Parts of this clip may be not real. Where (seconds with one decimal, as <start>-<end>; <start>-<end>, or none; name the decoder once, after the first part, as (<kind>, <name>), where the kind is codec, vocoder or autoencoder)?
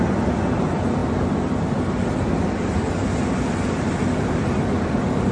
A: 0.0-1.0 (vocoder, BigVGAN v2); 4.2-5.3